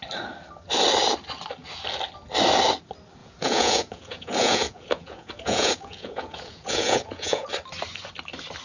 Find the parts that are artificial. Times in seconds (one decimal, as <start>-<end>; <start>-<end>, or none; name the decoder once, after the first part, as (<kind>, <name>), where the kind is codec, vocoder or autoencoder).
3.2-7.5 (vocoder, Vocos)